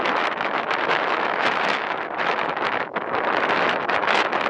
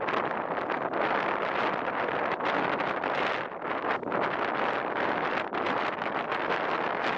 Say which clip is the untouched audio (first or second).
second